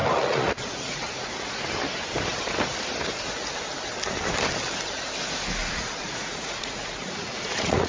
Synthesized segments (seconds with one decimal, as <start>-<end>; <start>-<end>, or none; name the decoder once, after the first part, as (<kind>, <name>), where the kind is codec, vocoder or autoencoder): 0.0-1.6 (vocoder, Vocos); 5.6-7.9